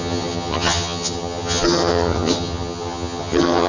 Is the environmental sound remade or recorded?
remade